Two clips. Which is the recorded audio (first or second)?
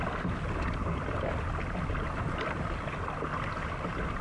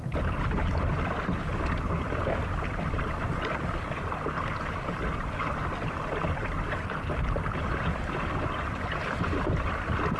first